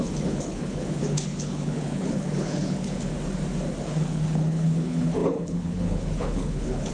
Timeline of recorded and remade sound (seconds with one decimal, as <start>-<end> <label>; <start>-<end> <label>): 0.0-3.1 remade; 3.1-3.8 recorded; 3.8-6.9 remade